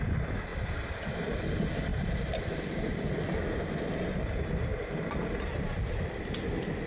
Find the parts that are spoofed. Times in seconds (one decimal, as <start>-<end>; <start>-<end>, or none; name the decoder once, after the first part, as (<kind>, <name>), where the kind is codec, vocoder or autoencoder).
0.5-1.4 (vocoder, BigVGAN v2); 1.9-3.0; 4.7-5.9